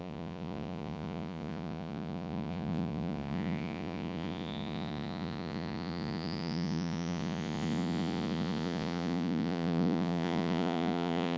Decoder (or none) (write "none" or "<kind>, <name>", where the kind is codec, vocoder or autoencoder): vocoder, Vocos